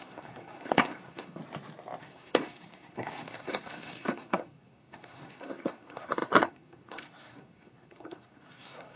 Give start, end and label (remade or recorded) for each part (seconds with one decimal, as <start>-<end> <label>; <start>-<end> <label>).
0.0-1.4 remade; 1.4-2.0 recorded; 2.0-9.0 remade